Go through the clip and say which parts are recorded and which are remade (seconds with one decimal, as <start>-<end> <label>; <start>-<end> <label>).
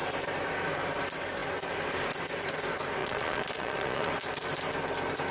0.0-3.0 recorded; 3.0-4.1 remade; 4.1-5.3 recorded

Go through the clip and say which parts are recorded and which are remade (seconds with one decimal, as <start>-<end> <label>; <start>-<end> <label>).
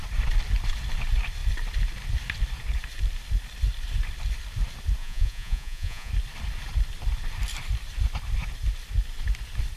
0.0-5.0 recorded; 5.0-6.1 remade; 6.1-9.8 recorded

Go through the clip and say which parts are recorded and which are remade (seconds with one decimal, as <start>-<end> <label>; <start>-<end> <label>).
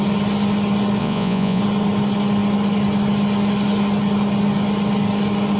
0.0-1.0 recorded; 1.0-1.6 remade; 1.6-5.6 recorded